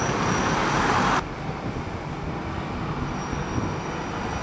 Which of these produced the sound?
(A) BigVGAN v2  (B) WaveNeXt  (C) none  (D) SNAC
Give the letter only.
C